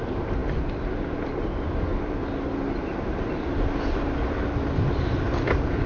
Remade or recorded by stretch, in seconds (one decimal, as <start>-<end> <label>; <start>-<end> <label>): 0.0-5.9 recorded